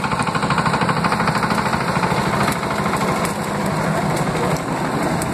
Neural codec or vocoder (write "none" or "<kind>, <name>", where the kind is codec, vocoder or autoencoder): none